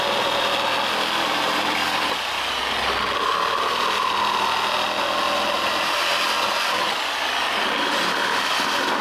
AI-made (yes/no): no